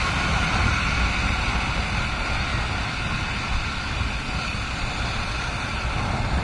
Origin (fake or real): real